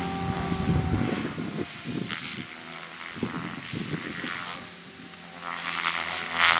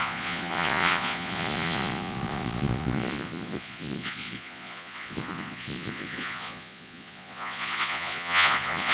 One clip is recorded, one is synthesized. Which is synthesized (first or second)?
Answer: second